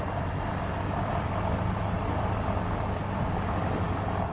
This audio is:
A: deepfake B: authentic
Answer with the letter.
B